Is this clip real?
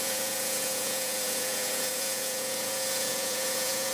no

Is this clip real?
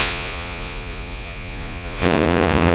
no